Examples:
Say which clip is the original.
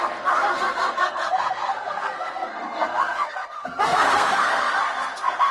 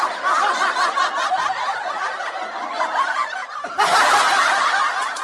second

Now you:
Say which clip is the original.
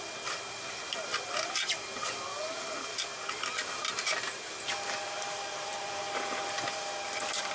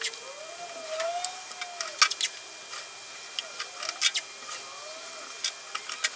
second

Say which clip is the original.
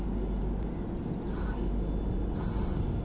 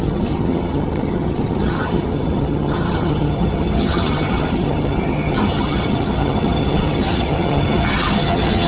first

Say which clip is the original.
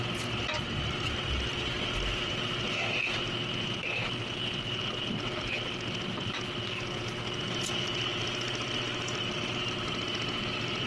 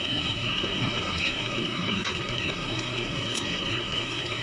first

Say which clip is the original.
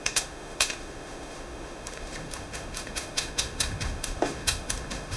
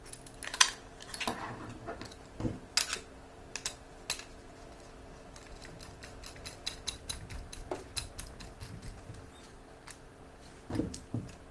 second